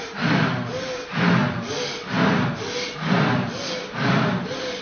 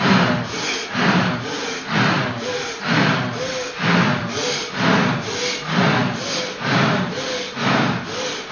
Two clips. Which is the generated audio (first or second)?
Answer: second